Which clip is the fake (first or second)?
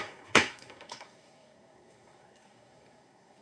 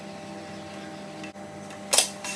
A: first